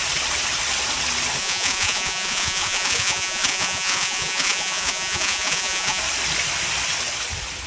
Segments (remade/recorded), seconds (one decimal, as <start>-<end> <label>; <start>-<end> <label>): 0.0-1.4 recorded; 1.4-6.0 remade; 6.0-7.7 recorded